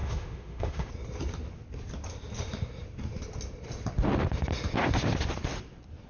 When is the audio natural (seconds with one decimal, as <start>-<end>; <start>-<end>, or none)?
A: 0.9-6.1